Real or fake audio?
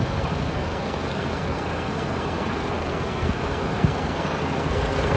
fake